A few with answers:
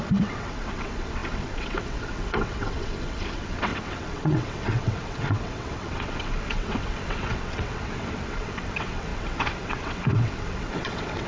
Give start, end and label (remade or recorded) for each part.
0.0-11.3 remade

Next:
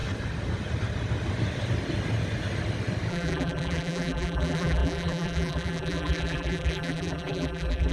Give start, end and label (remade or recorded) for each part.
0.0-3.1 recorded; 3.1-7.9 remade

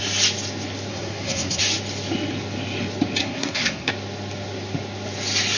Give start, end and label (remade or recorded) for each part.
0.0-0.9 recorded; 0.9-1.6 remade; 1.6-3.2 recorded; 3.2-3.9 remade; 3.9-5.6 recorded

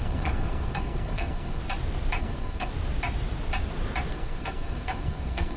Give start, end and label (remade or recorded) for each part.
0.0-1.6 remade; 1.6-2.2 recorded; 2.2-2.7 remade; 2.7-4.1 recorded; 4.1-5.6 remade